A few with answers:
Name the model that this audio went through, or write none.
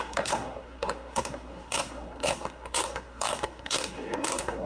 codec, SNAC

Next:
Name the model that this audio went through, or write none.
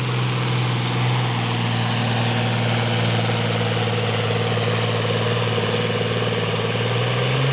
none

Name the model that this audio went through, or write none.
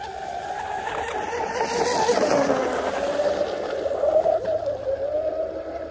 none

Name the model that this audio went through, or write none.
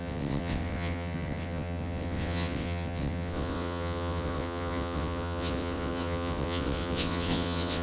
vocoder, WaveNeXt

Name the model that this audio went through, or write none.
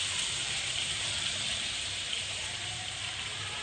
vocoder, BigVGAN v2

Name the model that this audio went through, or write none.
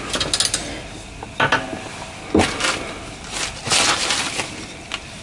none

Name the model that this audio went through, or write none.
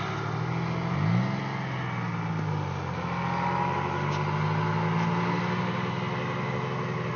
none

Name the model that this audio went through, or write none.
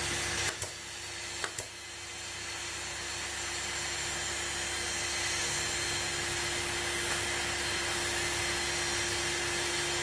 none